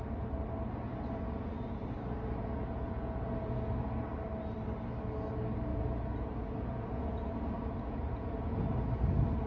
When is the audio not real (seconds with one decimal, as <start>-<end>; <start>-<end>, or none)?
0.9-1.8; 2.4-3.7; 5.7-8.6